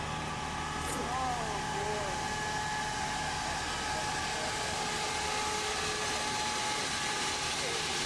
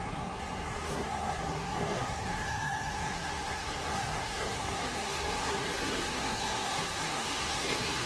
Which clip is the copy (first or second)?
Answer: second